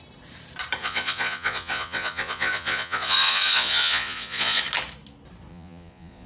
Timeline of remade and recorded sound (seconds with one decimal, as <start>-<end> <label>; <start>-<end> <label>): 0.0-0.8 recorded; 0.8-4.6 remade; 4.6-5.5 recorded; 5.5-6.3 remade